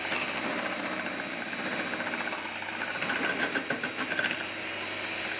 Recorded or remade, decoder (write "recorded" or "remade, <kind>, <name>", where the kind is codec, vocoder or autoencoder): recorded